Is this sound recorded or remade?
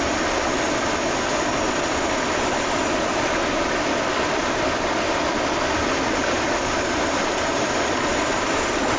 recorded